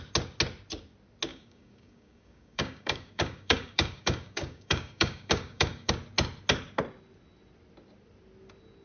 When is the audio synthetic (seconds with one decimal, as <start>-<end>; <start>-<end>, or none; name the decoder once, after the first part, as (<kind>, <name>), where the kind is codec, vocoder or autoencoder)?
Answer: 1.3-5.9 (codec, DAC)

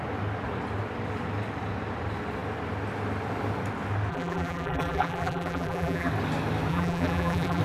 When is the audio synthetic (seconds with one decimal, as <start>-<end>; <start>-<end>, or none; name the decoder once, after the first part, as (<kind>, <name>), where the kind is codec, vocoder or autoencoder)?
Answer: 4.1-6.1 (vocoder, BigVGAN v2); 6.7-7.6

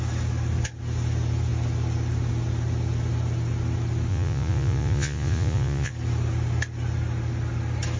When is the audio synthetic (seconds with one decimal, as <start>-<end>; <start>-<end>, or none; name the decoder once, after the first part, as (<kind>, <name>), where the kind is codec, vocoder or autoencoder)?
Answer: 4.1-5.9 (vocoder, Vocos)

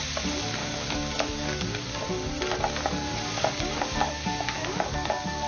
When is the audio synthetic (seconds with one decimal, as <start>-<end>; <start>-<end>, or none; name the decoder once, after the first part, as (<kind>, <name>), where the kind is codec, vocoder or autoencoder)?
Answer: 0.6-2.0 (codec, DAC); 3.1-5.5

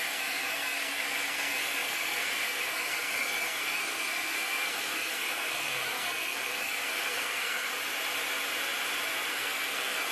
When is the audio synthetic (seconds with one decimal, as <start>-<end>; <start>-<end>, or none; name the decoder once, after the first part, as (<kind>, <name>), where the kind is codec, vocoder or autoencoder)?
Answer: 0.0-7.7 (codec, SNAC); 9.3-10.1

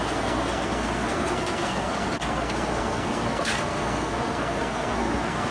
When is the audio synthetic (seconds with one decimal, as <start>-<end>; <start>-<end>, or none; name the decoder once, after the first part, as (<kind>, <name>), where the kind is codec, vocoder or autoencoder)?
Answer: 0.0-5.5 (codec, SNAC)

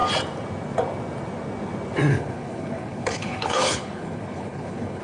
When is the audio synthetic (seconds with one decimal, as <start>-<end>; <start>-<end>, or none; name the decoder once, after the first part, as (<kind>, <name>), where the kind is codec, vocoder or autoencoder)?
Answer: 2.1-5.0 (codec, HILCodec)

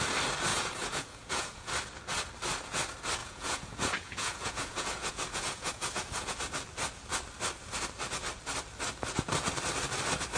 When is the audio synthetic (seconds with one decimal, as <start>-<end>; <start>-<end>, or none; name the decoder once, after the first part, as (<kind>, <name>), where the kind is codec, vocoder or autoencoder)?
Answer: 0.5-1.7 (vocoder, Vocos); 3.2-6.4